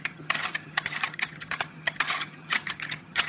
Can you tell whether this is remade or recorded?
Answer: remade